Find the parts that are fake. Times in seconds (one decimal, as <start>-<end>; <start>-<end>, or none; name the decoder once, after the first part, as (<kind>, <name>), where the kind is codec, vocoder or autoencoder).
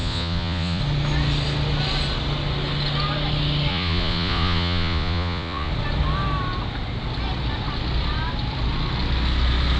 0.0-0.8 (vocoder, Vocos); 3.7-5.7